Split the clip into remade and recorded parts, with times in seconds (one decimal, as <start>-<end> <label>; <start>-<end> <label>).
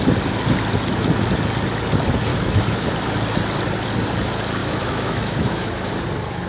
0.0-2.3 recorded; 2.3-2.9 remade; 2.9-4.6 recorded; 4.6-5.9 remade; 5.9-6.5 recorded